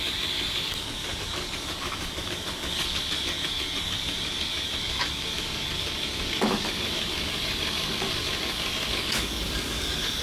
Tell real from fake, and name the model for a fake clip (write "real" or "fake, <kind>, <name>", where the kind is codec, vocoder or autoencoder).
fake, codec, DAC